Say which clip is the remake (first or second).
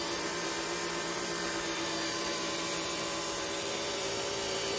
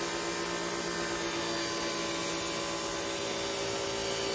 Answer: first